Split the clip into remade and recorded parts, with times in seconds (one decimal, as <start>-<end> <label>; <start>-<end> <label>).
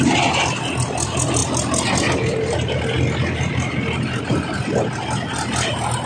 0.0-6.1 recorded